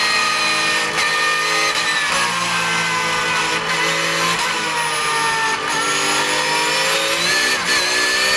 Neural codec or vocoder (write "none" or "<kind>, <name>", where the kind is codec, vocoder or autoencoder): none